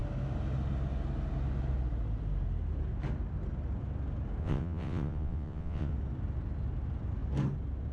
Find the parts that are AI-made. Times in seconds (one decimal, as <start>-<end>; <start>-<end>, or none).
4.4-5.9